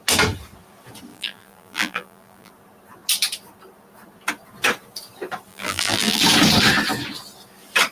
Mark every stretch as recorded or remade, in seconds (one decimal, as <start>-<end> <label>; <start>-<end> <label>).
0.0-1.1 recorded; 1.1-2.5 remade; 2.5-5.5 recorded; 5.5-6.2 remade; 6.2-7.9 recorded